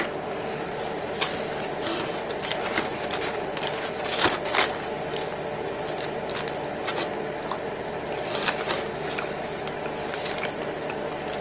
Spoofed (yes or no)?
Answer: no